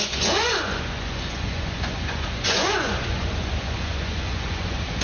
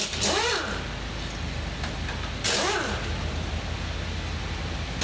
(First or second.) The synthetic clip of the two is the first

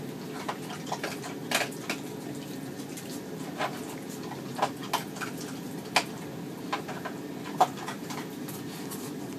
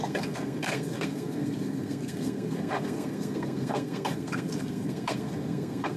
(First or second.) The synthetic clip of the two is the second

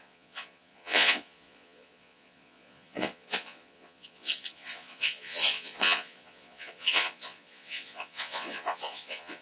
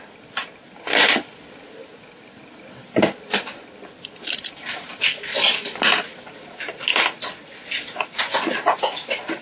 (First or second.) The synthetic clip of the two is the first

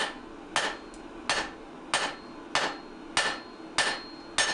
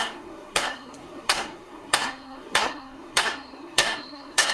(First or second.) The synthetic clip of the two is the second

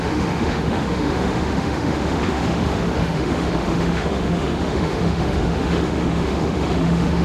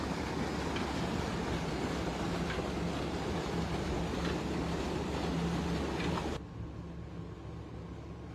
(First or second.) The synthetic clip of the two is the first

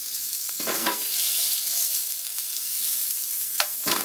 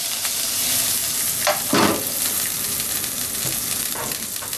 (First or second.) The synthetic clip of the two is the first